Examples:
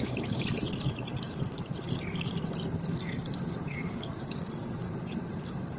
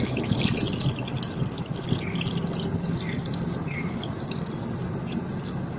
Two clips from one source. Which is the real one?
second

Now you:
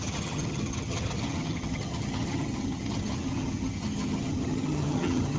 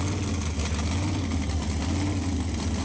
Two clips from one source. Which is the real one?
second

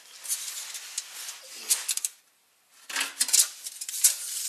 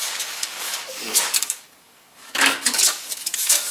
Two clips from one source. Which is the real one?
first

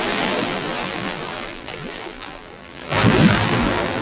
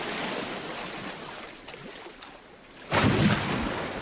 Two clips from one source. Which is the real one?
second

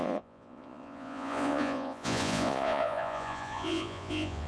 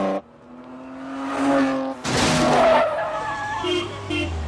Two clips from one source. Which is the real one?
second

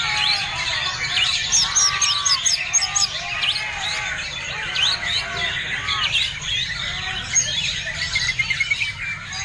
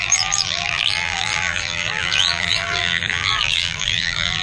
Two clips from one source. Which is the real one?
first